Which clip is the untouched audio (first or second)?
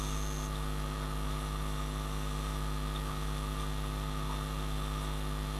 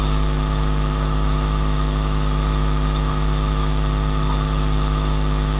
first